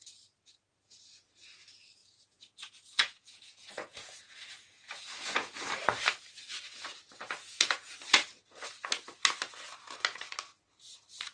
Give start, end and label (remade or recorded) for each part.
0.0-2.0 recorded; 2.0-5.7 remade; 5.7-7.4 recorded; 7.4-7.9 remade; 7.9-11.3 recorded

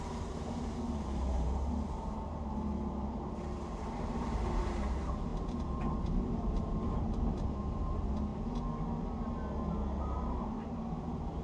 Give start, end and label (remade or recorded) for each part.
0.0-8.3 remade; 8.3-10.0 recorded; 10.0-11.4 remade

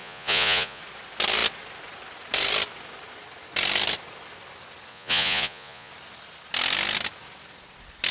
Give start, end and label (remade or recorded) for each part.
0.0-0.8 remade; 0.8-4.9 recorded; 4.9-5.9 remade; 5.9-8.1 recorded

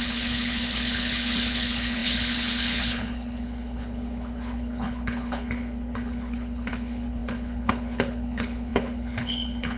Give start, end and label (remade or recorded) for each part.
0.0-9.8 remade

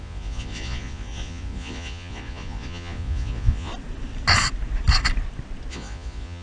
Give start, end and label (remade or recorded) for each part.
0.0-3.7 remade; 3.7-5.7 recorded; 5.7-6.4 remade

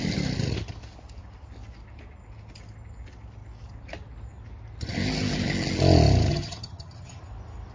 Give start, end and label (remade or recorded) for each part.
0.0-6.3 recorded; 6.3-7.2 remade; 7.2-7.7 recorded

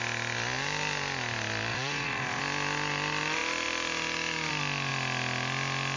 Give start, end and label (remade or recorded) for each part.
0.0-1.7 recorded; 1.7-2.4 remade; 2.4-6.0 recorded